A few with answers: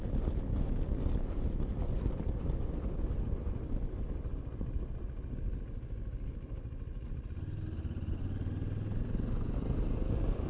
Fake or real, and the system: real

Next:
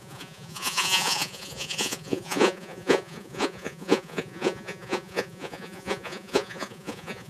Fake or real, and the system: fake, vocoder, Vocos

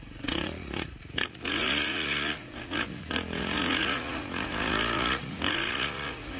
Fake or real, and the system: fake, vocoder, Vocos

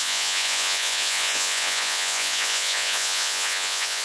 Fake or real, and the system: fake, vocoder, Vocos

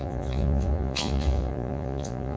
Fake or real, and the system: fake, vocoder, Vocos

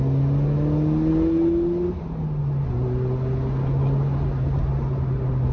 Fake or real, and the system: real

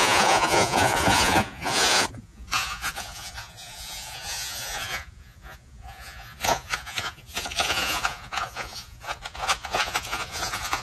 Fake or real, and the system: fake, vocoder, Vocos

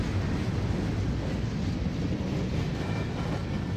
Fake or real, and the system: real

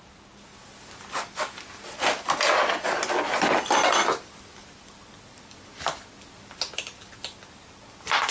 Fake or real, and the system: real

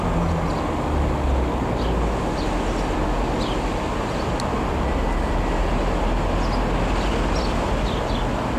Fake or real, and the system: real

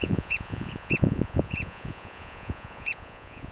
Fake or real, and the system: fake, vocoder, Vocos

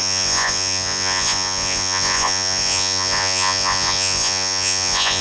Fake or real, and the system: fake, vocoder, Vocos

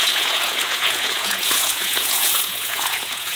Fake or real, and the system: fake, vocoder, Vocos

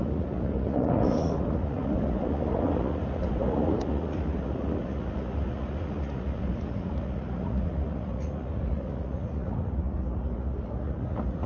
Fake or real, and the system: fake, vocoder, Vocos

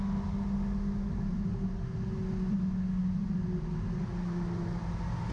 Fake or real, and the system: real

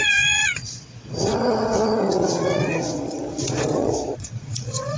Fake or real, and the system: fake, vocoder, Vocos